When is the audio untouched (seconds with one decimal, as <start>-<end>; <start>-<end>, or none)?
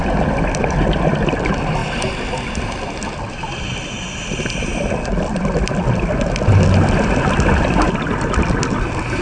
0.0-9.2